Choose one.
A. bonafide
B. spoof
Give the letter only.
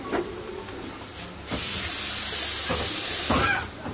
A